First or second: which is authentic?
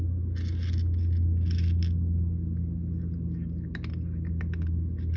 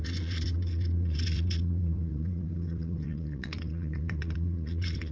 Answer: first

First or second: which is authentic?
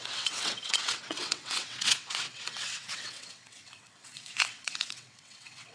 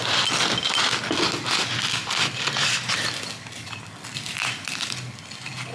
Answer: second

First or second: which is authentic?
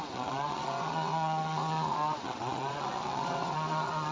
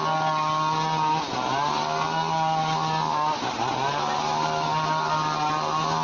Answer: second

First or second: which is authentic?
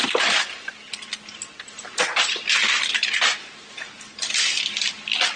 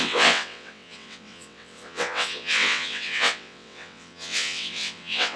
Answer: first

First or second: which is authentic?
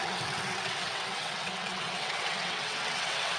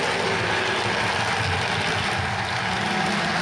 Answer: second